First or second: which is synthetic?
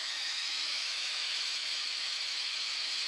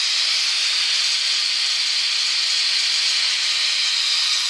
first